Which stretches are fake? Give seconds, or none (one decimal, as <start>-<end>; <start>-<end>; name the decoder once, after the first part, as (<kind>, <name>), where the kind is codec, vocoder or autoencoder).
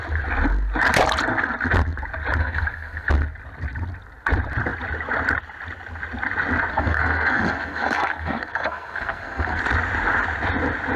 2.4-3.1 (codec, SNAC); 6.7-9.6